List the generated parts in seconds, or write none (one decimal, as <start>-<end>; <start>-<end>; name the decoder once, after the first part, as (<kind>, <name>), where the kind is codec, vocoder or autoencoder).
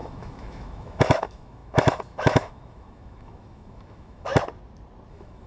0.0-4.3 (autoencoder, DAC-VAE); 5.1-5.5